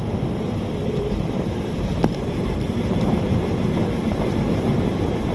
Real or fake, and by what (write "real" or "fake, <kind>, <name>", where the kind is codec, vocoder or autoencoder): fake, vocoder, BigVGAN v2